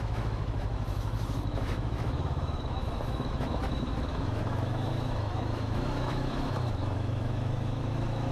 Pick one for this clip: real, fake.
fake